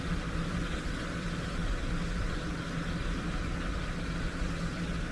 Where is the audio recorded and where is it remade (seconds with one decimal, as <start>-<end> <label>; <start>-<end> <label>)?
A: 0.0-5.1 recorded